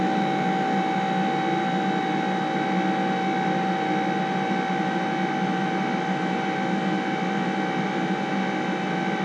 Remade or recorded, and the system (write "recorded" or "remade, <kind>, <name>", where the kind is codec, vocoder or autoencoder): recorded